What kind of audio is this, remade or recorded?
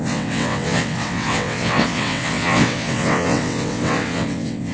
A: remade